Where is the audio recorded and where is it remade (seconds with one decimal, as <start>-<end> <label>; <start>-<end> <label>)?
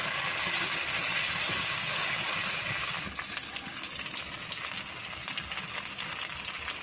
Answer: 0.0-6.8 recorded